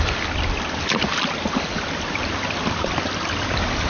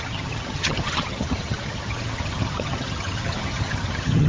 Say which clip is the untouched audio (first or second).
first